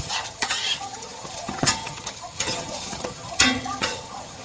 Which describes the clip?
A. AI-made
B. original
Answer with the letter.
A